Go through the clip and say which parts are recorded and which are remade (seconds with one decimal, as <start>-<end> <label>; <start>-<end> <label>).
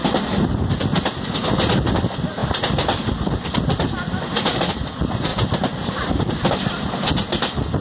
0.0-7.8 recorded